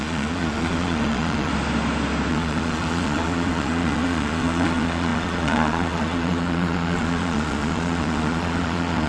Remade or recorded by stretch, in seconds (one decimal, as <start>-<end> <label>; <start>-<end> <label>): 0.0-1.5 remade; 1.5-2.3 recorded; 2.3-9.1 remade